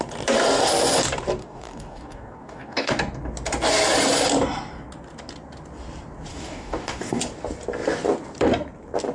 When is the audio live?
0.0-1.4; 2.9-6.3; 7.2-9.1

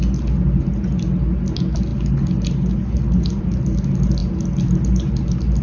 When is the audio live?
0.0-5.6

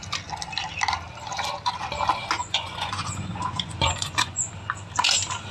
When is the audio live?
0.0-2.4; 4.5-5.5

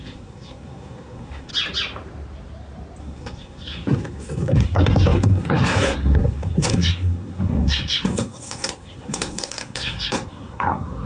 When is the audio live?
1.5-3.0

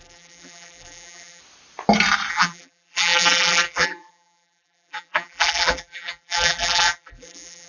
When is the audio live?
1.4-2.3

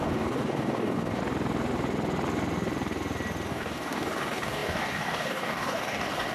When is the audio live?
1.2-3.5

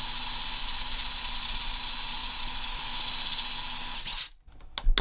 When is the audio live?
0.0-0.6; 1.8-2.2; 2.8-5.0